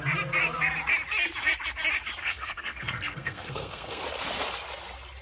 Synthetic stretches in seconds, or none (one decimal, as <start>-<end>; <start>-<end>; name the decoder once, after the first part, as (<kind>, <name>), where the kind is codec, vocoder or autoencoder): 2.2-4.0 (codec, SNAC)